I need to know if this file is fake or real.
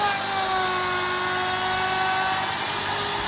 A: real